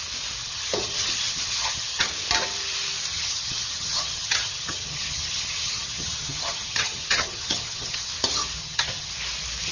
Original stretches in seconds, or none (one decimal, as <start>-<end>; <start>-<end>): 0.0-0.4; 2.1-3.1; 8.1-8.6; 9.1-9.7